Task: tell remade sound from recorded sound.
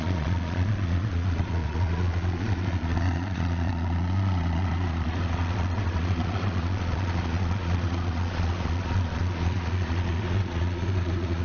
remade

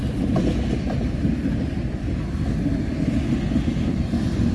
recorded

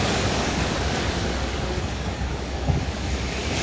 remade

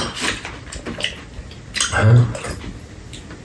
recorded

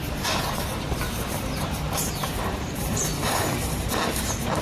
remade